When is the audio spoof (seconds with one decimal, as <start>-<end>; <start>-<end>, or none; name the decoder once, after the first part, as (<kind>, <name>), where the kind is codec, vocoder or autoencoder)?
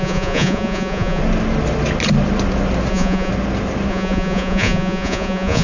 0.0-1.2 (vocoder, Vocos); 2.9-3.3; 3.9-5.6